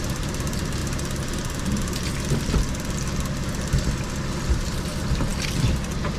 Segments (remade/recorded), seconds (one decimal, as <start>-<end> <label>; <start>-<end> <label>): 0.0-0.8 remade; 0.8-4.5 recorded; 4.5-6.2 remade